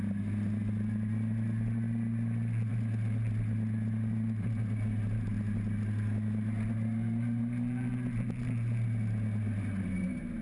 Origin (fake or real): real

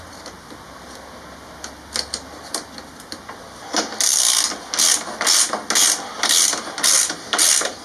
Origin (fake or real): real